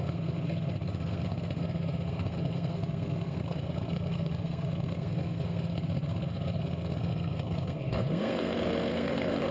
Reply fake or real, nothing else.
fake